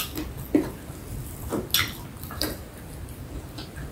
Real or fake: real